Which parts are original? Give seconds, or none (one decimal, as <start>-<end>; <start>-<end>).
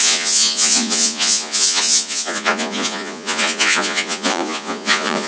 none